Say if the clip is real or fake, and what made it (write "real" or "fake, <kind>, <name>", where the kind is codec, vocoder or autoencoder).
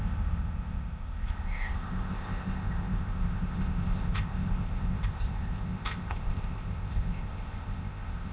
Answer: fake, codec, ZipCodec